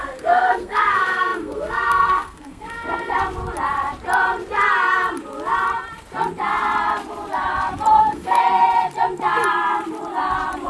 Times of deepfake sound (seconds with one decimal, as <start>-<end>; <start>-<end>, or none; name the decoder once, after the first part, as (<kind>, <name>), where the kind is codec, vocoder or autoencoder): 0.0-3.1 (codec, SNAC); 8.0-8.4